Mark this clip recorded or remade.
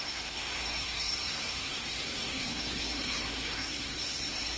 remade